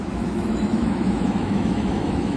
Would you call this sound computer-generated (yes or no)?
yes